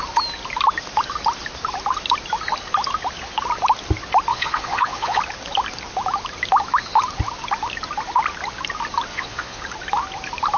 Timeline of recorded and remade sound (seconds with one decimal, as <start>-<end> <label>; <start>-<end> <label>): 0.0-4.3 recorded; 4.3-5.2 remade; 5.2-9.1 recorded; 9.1-9.6 remade; 9.6-10.6 recorded